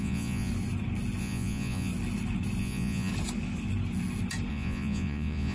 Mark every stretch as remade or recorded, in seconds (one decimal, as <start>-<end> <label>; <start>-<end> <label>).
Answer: 0.0-0.5 remade; 0.5-1.2 recorded; 1.2-1.9 remade; 1.9-2.6 recorded; 2.6-3.1 remade; 3.1-4.5 recorded; 4.5-5.5 remade